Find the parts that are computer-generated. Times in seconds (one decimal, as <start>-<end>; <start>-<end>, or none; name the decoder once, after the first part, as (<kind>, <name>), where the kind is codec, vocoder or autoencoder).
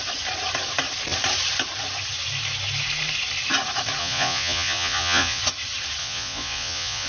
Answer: 4.0-5.4 (vocoder, Vocos); 6.0-7.1